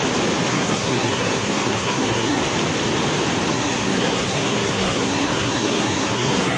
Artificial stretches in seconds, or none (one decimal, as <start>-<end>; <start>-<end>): 0.5-2.4; 3.5-6.6